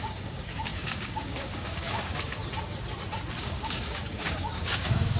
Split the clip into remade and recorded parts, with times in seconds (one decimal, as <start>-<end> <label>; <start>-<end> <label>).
0.0-2.4 remade; 2.4-3.4 recorded; 3.4-5.2 remade